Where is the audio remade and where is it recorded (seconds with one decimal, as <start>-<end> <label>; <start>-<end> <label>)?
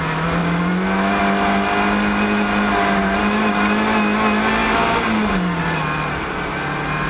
0.0-7.1 recorded